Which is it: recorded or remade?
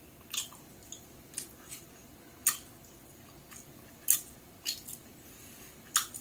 recorded